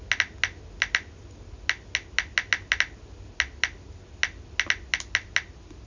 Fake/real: real